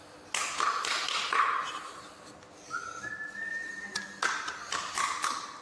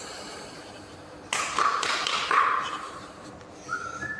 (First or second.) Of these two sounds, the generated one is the second